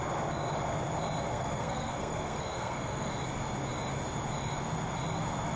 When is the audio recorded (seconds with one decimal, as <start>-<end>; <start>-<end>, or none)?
0.0-1.3; 3.1-5.6